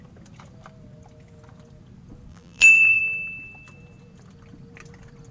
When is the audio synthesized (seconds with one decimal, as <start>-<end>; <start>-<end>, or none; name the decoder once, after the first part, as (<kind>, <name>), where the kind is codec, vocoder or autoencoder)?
2.3-3.0 (vocoder, BigVGAN v2)